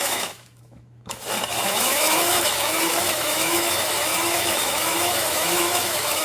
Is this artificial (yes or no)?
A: yes